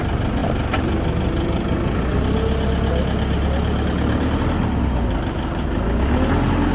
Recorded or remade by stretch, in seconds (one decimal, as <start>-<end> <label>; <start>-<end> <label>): 0.0-6.7 recorded